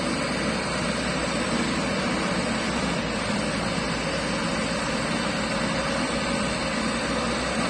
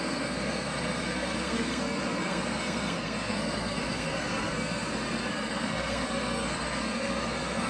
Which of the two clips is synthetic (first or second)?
second